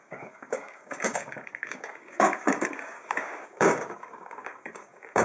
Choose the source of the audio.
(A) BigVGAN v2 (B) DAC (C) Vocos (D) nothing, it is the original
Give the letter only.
B